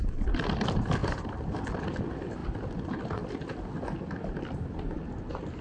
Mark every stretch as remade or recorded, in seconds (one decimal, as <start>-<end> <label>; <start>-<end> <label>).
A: 0.0-1.0 recorded; 1.0-1.7 remade; 1.7-5.6 recorded